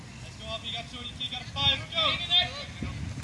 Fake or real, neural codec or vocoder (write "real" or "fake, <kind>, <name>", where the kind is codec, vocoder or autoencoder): real